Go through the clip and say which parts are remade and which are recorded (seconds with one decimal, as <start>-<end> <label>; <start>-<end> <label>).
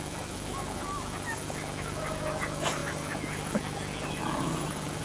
0.0-5.0 remade